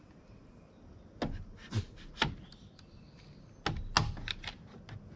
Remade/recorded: recorded